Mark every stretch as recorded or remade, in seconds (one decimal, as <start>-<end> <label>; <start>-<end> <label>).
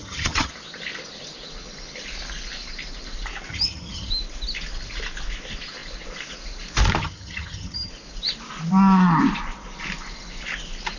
0.0-0.5 remade; 0.5-3.5 recorded; 3.5-4.1 remade; 4.1-7.0 recorded; 7.0-7.9 remade; 7.9-11.0 recorded